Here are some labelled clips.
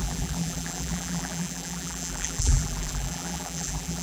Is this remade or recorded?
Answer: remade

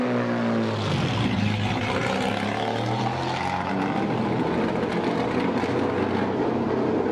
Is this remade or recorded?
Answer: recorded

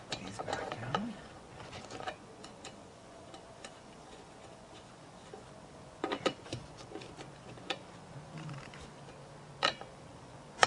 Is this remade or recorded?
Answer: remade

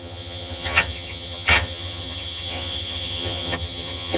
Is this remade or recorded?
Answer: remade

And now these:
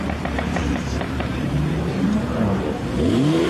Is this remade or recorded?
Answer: remade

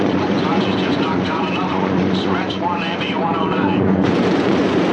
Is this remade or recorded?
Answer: remade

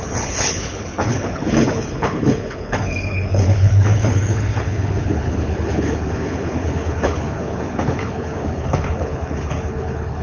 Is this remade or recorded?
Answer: remade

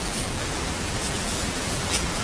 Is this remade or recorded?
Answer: remade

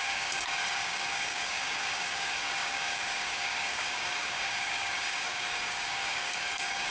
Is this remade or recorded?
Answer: remade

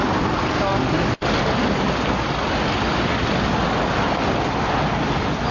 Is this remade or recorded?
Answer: recorded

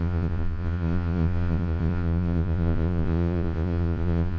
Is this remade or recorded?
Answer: remade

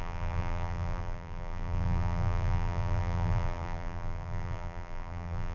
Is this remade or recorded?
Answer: remade